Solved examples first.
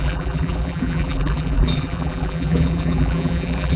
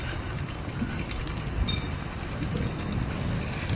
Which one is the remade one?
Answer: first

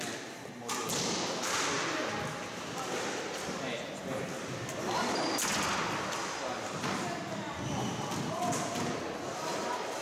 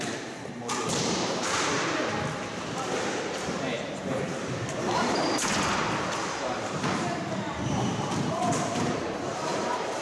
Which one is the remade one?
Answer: second